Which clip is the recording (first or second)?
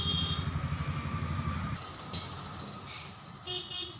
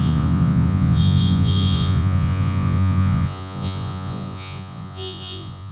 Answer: first